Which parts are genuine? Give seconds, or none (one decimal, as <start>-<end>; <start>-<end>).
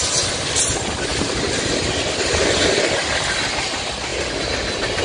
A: 0.0-5.0